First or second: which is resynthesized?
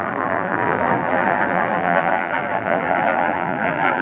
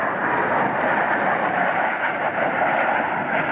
first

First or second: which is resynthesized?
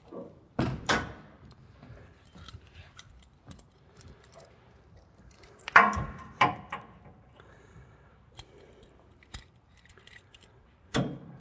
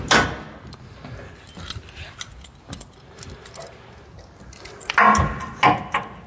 first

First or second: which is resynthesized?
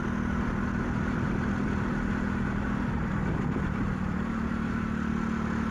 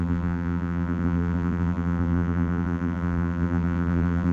second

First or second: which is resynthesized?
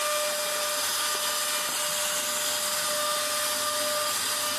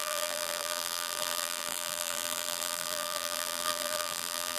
second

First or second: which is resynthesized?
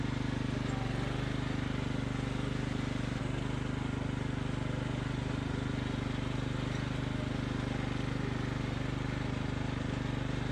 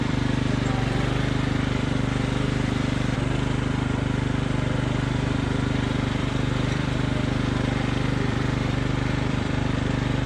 second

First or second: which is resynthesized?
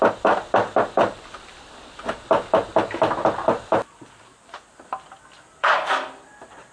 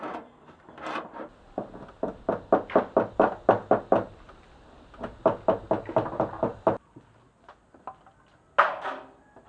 first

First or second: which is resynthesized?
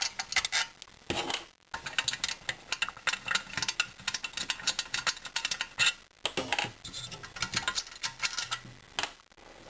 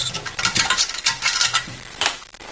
second